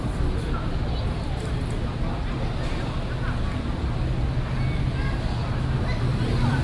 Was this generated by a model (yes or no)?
no